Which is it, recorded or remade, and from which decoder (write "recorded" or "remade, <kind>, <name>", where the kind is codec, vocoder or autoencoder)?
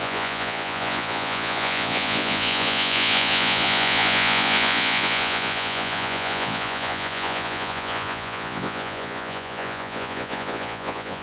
remade, vocoder, Vocos